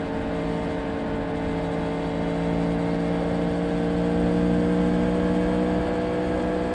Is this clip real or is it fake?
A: real